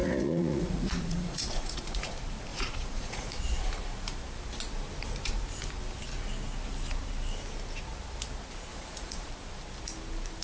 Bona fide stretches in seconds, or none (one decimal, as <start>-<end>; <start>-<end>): 2.1-2.5; 3.7-8.7; 9.3-10.4